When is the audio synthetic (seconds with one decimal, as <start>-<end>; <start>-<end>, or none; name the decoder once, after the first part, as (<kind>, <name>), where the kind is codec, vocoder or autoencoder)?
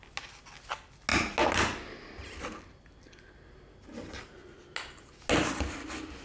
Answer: none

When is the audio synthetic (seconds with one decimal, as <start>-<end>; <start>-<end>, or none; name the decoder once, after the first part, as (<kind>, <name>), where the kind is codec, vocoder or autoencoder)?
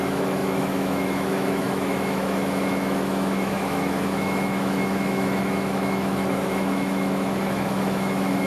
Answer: 0.0-8.5 (autoencoder, DAC-VAE)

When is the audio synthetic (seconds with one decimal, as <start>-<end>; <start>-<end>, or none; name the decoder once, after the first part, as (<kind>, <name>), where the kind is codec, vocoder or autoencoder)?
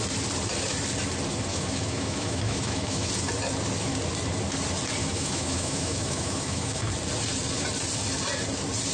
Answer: 1.5-3.1 (autoencoder, DAC-VAE); 5.0-6.9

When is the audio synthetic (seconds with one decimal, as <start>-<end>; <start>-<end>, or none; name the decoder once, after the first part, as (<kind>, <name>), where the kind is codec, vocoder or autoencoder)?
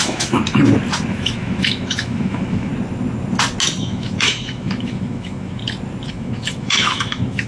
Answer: 0.0-0.4 (autoencoder, DAC-VAE); 1.1-2.7; 3.8-5.6; 6.1-7.5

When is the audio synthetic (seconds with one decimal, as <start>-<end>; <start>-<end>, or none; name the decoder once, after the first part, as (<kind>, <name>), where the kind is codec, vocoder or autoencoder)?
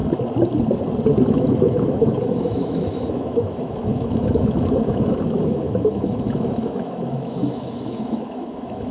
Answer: 1.3-8.9 (autoencoder, DAC-VAE)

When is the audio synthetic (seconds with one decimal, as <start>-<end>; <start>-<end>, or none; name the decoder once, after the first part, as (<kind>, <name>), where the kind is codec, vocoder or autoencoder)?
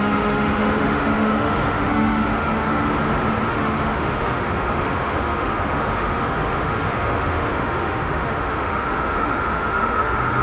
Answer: 0.0-2.9 (autoencoder, DAC-VAE); 3.5-10.4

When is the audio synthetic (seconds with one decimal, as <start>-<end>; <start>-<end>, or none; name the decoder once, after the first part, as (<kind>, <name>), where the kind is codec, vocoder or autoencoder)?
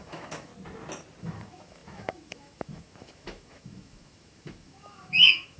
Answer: 0.0-0.5 (autoencoder, DAC-VAE); 1.2-5.6